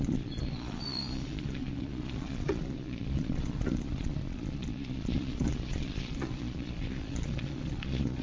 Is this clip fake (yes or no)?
yes